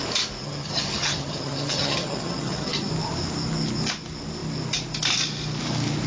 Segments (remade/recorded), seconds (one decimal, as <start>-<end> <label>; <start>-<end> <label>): 0.0-0.4 recorded; 0.4-2.9 remade; 2.9-6.1 recorded